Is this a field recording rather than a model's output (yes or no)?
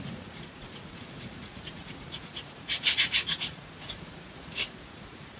no